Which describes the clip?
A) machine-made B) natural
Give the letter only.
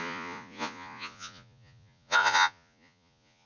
A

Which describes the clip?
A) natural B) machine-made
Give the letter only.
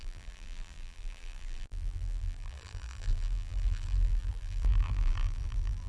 B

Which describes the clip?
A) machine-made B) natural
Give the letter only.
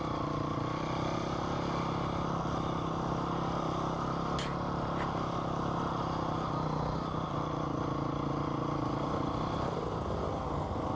B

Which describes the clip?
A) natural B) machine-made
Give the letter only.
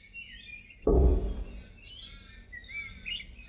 A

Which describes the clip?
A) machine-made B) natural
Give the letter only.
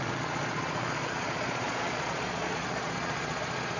A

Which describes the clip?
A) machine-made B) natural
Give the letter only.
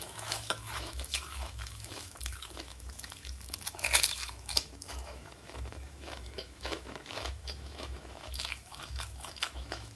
A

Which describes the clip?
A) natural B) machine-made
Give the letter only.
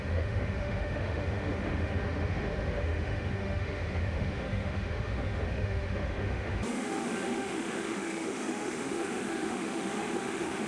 B